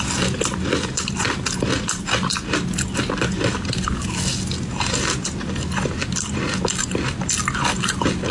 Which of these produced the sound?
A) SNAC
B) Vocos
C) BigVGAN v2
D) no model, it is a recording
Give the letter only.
D